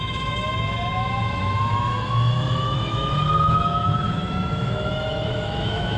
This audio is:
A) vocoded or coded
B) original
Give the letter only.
A